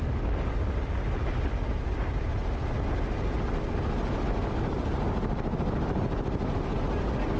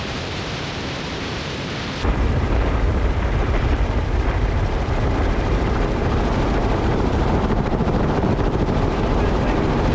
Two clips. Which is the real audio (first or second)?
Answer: first